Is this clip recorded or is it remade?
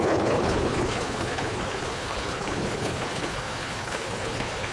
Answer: remade